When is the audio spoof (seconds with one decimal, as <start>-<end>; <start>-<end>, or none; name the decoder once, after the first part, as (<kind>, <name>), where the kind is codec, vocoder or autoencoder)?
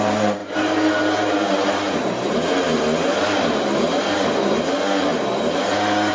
0.0-2.7 (vocoder, BigVGAN v2); 3.2-5.1